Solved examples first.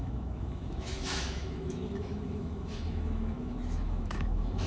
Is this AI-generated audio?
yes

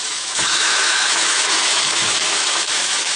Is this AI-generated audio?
yes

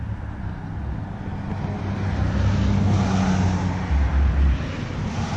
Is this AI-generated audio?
no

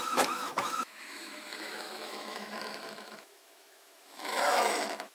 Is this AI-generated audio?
yes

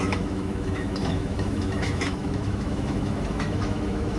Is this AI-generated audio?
yes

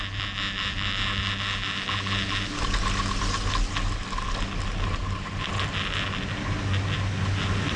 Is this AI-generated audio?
no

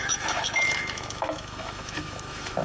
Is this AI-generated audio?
yes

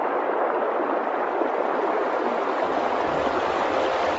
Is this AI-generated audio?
no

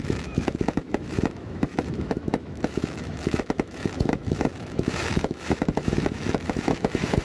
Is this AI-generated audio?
yes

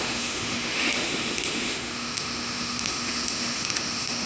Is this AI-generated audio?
yes